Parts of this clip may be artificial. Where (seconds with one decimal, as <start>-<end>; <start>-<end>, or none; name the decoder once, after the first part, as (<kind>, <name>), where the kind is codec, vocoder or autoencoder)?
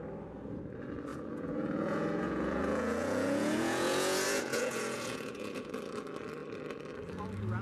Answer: 1.1-5.7 (vocoder, Vocos)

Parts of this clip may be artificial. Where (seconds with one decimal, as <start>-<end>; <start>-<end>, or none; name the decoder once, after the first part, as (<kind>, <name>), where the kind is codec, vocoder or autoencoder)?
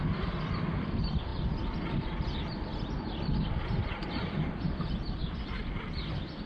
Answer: none